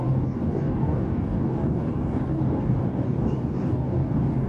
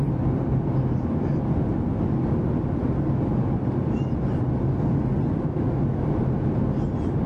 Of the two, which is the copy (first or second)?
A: first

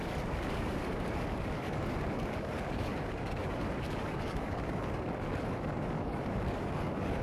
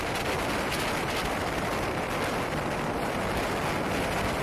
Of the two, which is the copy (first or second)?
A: first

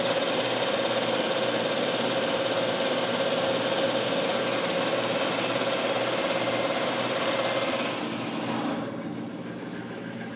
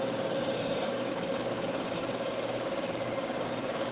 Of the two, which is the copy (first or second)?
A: second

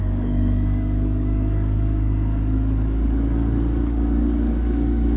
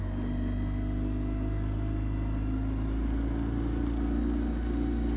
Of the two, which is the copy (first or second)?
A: first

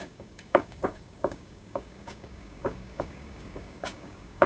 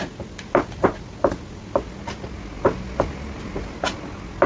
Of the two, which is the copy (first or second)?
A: first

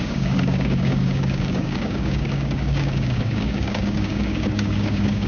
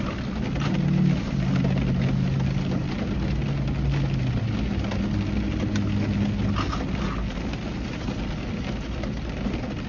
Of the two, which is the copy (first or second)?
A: first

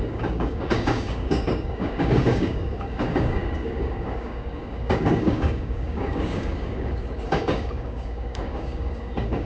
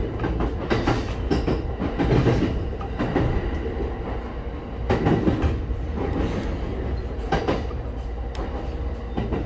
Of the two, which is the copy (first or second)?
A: first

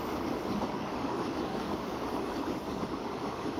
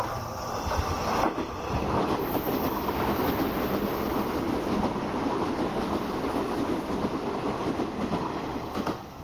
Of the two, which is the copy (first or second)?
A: first